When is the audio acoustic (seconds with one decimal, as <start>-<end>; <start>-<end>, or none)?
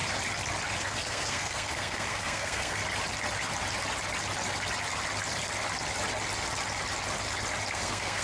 0.0-0.8; 2.8-7.7